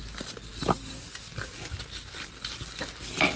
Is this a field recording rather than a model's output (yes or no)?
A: yes